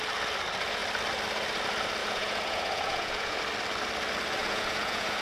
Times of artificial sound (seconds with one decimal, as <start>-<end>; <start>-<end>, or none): 2.0-3.4; 4.4-5.2